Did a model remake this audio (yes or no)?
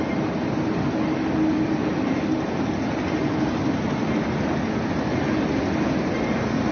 no